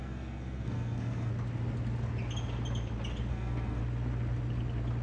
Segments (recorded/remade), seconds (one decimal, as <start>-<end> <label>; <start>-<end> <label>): 0.0-1.3 remade; 1.3-3.3 recorded; 3.3-3.8 remade; 3.8-5.0 recorded